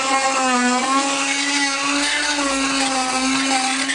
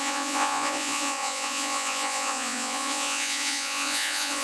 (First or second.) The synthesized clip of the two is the second